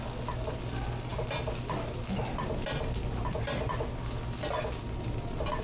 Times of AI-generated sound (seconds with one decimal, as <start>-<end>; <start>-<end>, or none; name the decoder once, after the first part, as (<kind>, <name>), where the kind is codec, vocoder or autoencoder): none